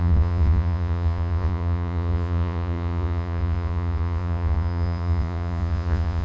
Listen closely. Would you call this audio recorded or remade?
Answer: remade